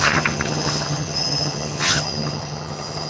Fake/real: fake